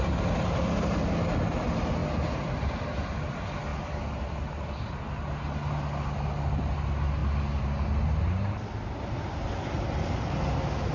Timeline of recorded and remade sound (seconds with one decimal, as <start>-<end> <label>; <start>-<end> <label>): 0.0-10.9 recorded